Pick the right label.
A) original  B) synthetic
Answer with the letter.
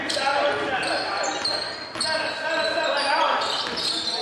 A